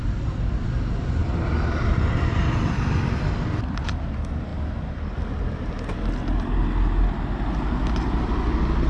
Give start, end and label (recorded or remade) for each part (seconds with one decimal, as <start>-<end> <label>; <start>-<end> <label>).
0.0-1.2 recorded; 1.2-3.8 remade; 3.8-8.9 recorded